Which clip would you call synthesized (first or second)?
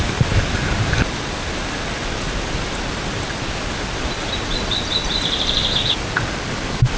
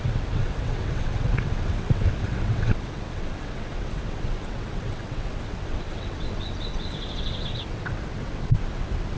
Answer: second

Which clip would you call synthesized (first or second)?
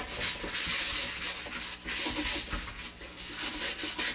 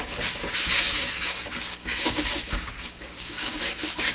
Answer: second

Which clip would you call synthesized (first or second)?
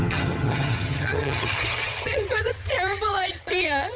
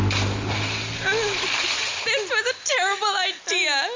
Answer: first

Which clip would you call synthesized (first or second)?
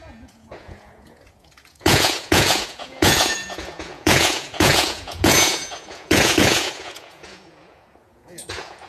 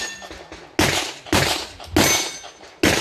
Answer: first